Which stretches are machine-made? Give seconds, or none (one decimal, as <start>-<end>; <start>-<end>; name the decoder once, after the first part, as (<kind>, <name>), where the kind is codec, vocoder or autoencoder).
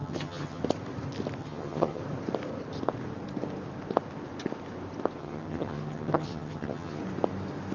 0.0-0.6 (vocoder, HiFi-GAN); 1.4-2.0; 5.2-7.0